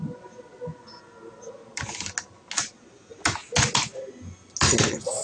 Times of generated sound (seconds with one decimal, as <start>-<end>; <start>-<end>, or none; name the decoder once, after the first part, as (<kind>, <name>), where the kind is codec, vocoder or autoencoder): none